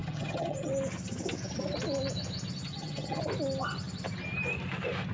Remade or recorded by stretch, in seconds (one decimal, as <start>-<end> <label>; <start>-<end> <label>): 0.0-0.7 remade; 0.7-2.7 recorded; 2.7-3.2 remade; 3.2-5.1 recorded